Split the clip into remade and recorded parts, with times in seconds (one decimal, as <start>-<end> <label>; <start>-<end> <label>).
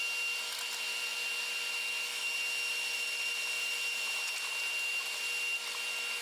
0.0-2.7 recorded; 2.7-4.5 remade; 4.5-6.2 recorded